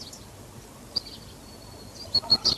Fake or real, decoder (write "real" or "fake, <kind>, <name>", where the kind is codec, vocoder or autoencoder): real